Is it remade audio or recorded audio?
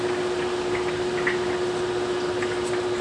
recorded